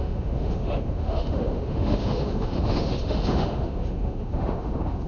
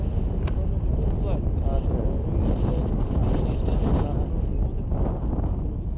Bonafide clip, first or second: second